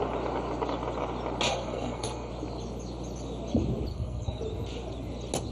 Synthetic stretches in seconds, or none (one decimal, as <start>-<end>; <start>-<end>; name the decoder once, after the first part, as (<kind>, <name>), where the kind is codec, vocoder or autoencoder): 1.5-2.3 (codec, SNAC); 3.9-4.4